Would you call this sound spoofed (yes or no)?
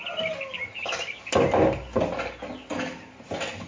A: no